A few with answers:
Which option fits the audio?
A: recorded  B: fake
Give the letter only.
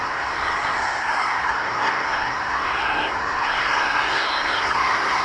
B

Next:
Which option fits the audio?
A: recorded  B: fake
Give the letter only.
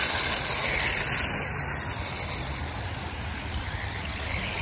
A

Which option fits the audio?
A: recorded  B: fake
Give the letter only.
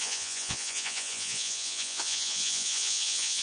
B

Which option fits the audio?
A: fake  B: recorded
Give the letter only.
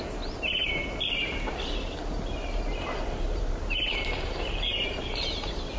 A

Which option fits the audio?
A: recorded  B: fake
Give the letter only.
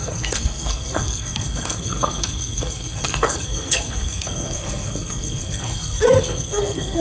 B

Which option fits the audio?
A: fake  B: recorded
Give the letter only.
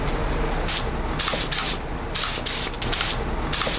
B